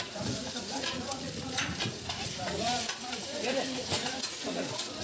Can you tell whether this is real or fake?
fake